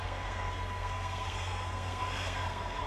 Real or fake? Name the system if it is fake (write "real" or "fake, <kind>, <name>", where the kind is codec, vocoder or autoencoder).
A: fake, codec, SNAC